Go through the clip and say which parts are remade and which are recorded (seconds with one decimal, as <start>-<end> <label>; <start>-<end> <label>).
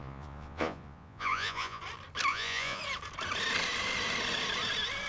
0.0-1.8 remade; 1.8-2.3 recorded; 2.3-2.8 remade; 2.8-5.1 recorded